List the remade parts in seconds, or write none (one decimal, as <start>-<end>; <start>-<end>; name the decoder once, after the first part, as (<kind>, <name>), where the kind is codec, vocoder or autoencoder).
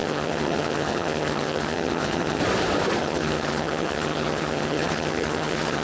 0.0-2.4 (vocoder, HiFi-GAN); 3.0-5.8